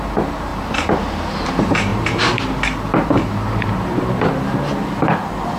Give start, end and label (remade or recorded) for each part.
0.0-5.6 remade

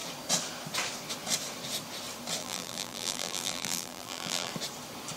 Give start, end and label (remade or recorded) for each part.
0.0-2.4 recorded; 2.4-4.5 remade; 4.5-5.2 recorded

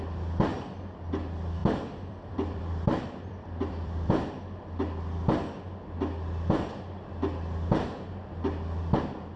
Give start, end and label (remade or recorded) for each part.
0.0-1.6 recorded; 1.6-4.3 remade; 4.3-9.4 recorded